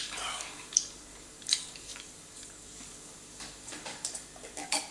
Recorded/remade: remade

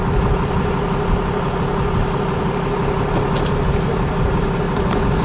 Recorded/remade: recorded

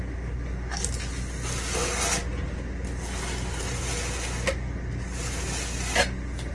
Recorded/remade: recorded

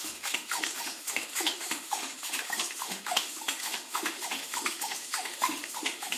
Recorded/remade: remade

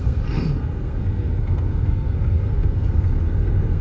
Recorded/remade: remade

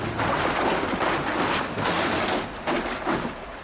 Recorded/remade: recorded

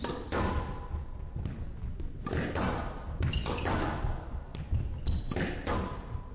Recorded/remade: recorded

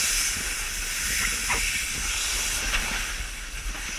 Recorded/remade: recorded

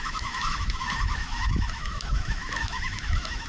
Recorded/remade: remade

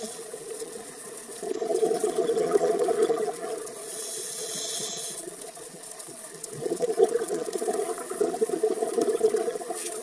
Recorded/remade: remade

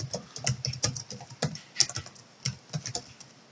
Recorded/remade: recorded